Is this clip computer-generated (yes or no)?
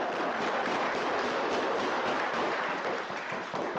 yes